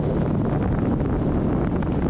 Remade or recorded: recorded